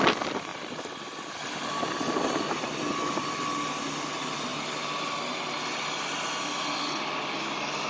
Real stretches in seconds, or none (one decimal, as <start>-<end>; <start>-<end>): 0.0-7.9